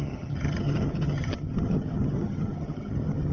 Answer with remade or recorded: remade